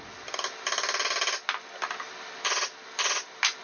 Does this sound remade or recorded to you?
recorded